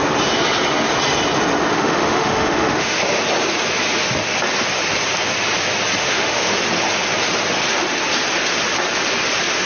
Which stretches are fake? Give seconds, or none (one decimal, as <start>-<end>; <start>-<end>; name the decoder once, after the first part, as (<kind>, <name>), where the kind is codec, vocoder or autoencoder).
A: 1.7-3.0 (autoencoder, DAC-VAE); 6.0-6.5